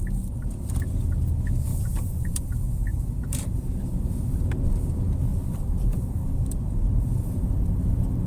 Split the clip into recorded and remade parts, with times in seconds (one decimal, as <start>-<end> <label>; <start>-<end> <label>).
0.0-1.7 recorded; 1.7-2.4 remade; 2.4-2.9 recorded; 2.9-3.8 remade; 3.8-5.3 recorded; 5.3-7.5 remade; 7.5-8.3 recorded